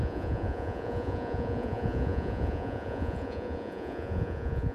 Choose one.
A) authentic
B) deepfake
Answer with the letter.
B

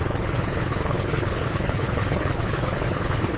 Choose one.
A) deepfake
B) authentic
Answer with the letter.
A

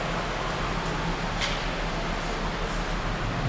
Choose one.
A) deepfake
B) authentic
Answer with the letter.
B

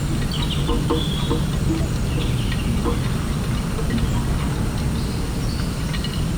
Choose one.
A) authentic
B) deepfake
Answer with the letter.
A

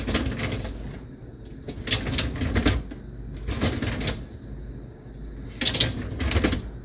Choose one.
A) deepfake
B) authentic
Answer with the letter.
B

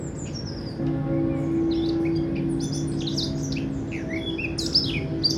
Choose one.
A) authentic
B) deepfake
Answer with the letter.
A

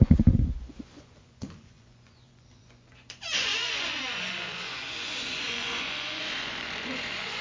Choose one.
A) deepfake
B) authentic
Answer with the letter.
A